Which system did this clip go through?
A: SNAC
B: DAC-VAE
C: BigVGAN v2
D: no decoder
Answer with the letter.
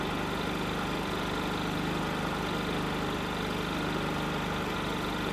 D